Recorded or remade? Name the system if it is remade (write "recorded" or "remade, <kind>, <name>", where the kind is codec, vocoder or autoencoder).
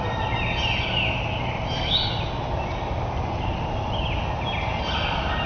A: recorded